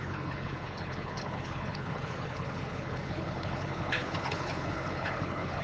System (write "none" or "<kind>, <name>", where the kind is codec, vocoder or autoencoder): codec, HILCodec